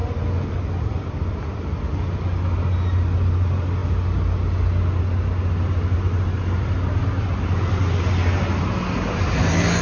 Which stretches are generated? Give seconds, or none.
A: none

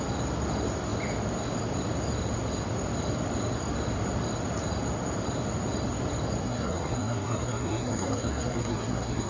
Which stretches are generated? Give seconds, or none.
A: 6.4-9.3 (codec, SNAC)

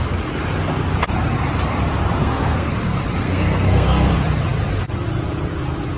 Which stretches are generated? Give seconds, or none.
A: 2.2-2.7 (codec, SNAC); 3.2-4.1